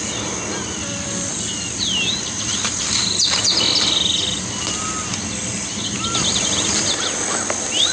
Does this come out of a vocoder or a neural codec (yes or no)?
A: no